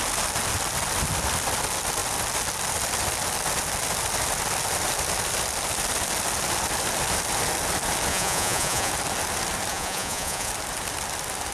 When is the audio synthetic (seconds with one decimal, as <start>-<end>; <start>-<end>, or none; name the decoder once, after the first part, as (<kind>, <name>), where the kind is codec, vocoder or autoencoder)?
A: 8.1-8.9 (vocoder, Vocos); 9.7-10.5